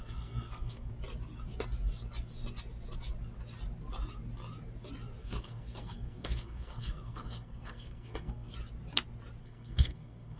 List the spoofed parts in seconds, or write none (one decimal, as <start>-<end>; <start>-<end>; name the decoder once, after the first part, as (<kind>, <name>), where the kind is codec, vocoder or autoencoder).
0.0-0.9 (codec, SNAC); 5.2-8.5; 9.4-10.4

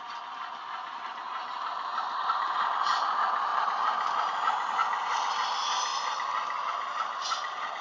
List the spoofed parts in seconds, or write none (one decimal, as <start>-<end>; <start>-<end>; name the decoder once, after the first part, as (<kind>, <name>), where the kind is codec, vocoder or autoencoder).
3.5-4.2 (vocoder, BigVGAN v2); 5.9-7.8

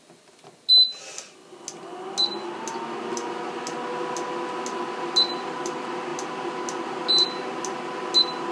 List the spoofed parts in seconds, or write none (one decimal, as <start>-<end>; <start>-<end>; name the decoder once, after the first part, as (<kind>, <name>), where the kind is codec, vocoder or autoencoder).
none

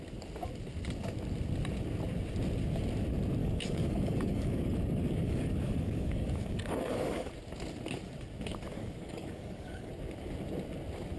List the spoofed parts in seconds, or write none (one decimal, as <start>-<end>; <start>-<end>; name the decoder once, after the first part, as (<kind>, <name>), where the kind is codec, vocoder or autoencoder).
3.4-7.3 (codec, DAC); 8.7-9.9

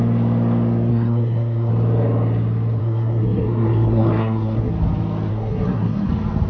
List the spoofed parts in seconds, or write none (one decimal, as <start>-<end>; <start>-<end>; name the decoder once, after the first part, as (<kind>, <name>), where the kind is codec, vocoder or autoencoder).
0.9-1.7 (codec, SNAC); 2.8-4.7; 5.3-6.1

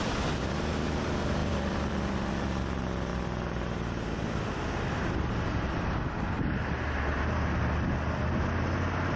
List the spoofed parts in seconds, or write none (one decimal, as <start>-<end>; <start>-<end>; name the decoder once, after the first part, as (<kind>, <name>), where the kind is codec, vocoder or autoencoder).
1.4-2.3 (vocoder, BigVGAN v2)

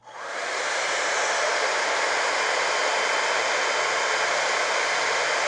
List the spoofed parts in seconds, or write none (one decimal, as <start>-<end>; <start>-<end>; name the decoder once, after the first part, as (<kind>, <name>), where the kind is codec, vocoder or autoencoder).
none

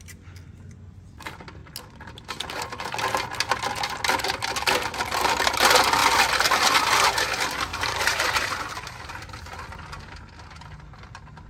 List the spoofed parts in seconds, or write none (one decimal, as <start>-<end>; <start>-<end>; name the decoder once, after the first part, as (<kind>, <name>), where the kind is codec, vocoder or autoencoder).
7.7-9.1 (vocoder, BigVGAN v2)